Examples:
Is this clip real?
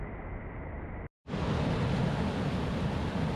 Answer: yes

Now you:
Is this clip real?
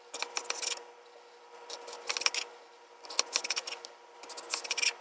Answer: yes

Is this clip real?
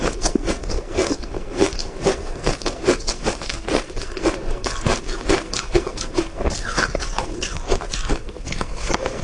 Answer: no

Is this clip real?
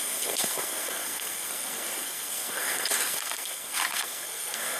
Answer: no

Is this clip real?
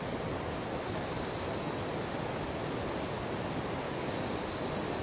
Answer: yes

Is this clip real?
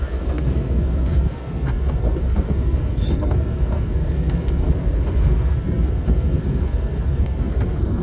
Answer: no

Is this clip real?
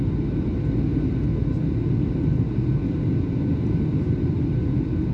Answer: yes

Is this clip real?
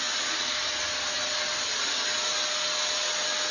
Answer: yes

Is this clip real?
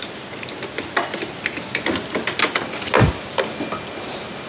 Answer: yes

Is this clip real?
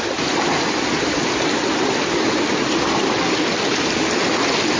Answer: yes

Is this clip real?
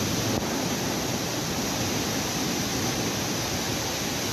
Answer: yes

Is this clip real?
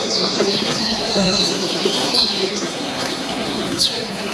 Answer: no